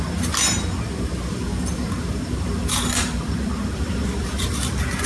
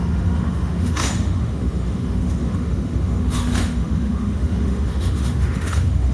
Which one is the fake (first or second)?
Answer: second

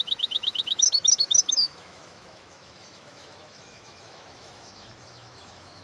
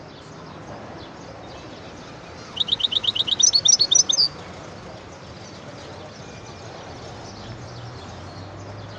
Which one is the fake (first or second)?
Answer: first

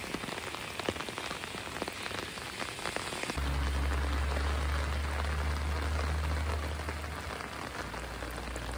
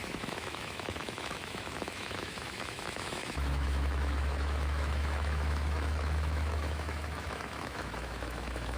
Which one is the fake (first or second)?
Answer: second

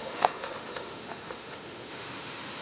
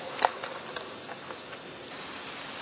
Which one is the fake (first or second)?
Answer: first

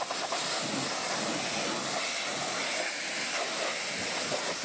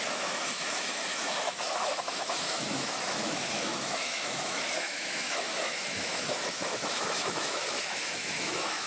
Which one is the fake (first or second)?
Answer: second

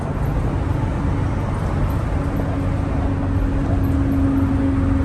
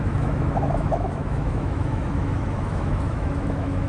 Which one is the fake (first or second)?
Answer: second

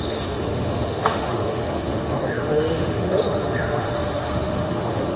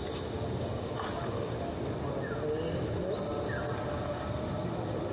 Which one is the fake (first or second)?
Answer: first